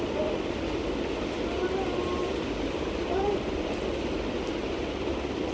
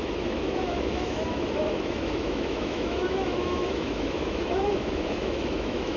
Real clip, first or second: first